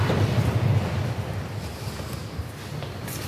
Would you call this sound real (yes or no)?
yes